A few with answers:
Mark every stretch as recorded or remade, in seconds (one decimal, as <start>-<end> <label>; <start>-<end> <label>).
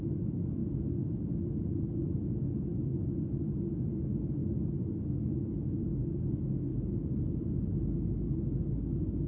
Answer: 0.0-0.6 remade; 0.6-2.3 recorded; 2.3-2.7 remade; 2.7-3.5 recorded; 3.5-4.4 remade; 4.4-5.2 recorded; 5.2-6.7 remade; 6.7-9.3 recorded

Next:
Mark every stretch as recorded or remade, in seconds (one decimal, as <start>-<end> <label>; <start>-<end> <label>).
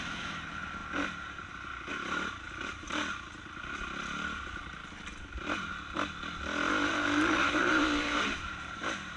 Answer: 0.0-0.8 remade; 0.8-1.9 recorded; 1.9-3.0 remade; 3.0-6.9 recorded; 6.9-9.2 remade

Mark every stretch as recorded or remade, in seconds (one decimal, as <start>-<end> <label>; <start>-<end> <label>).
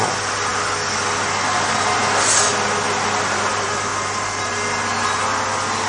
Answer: 0.0-5.9 recorded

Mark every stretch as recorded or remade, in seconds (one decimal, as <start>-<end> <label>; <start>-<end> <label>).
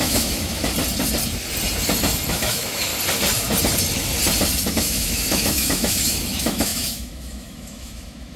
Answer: 0.0-0.6 remade; 0.6-2.3 recorded; 2.3-2.9 remade; 2.9-4.7 recorded; 4.7-8.4 remade